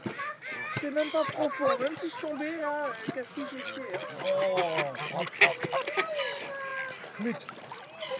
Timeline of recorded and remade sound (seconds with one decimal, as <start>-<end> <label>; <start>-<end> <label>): 0.0-8.2 recorded